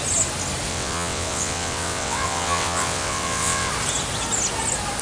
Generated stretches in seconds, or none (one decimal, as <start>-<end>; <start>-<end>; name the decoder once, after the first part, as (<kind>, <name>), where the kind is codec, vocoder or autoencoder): 0.7-3.7 (vocoder, WaveNeXt)